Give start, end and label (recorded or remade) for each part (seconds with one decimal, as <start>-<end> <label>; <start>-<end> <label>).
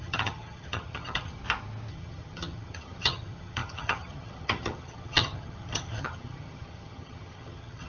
0.0-1.4 remade; 1.4-1.9 recorded; 1.9-7.9 remade